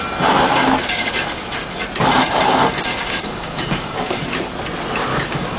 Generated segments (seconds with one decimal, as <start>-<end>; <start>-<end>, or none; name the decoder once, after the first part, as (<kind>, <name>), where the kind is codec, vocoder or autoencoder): 0.6-1.1 (codec, DAC); 2.9-4.2; 5.1-5.6